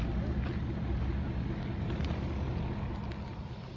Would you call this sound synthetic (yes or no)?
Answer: no